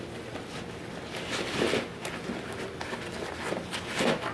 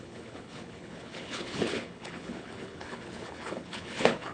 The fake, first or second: second